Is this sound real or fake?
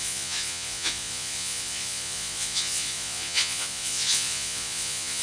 fake